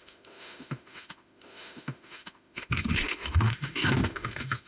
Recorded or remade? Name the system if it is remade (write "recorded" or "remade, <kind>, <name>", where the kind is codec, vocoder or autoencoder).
remade, autoencoder, DAC-VAE